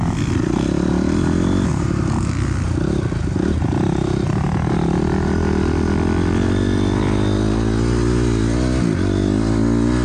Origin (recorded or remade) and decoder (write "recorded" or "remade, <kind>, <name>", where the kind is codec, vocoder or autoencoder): recorded